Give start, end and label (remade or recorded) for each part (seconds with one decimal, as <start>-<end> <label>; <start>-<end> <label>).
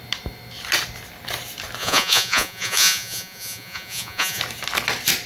0.0-1.8 recorded; 1.8-4.4 remade; 4.4-5.3 recorded